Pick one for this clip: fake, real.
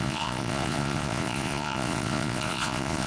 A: fake